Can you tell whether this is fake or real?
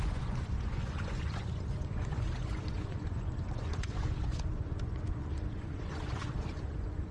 fake